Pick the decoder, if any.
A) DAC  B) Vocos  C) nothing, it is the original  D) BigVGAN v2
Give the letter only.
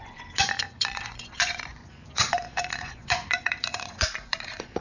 B